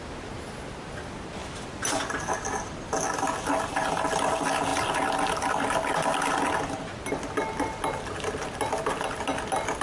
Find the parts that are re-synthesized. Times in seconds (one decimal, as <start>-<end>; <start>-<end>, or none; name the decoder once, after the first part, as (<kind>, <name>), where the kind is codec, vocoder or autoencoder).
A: none